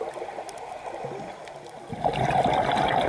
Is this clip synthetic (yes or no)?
no